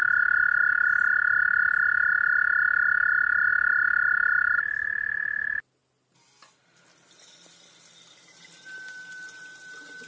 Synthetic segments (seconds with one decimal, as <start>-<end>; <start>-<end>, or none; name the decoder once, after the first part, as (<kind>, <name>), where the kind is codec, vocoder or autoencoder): 0.6-1.6 (vocoder, BigVGAN v2)